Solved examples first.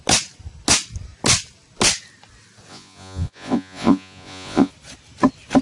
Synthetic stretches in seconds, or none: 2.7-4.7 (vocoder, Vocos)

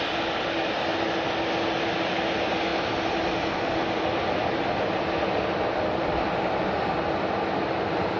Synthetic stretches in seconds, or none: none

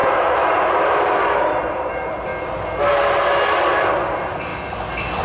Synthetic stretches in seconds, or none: 0.0-2.3 (vocoder, BigVGAN v2); 2.9-4.5

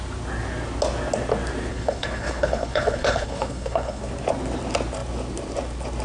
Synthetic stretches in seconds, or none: 1.7-4.0 (codec, HILCodec)

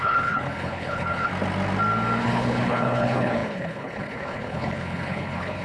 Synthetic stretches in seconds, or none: 0.0-1.3 (codec, HILCodec); 2.2-5.6

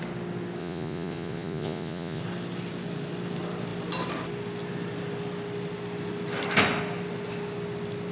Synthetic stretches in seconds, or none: 0.6-2.2 (vocoder, Vocos)

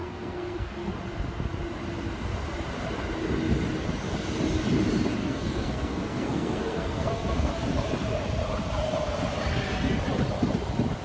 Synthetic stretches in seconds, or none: 0.0-0.9 (codec, SNAC); 5.2-7.5

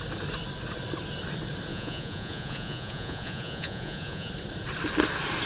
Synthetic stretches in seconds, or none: 1.7-4.3 (vocoder, Vocos)